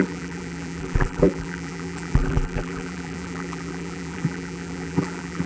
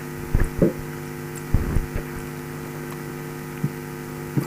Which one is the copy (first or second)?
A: first